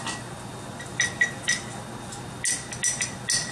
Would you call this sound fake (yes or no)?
no